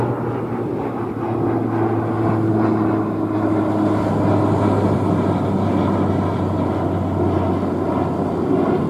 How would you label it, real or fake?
real